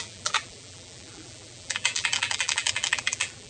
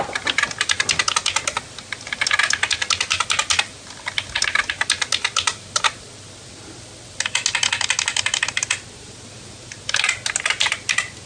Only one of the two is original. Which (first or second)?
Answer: second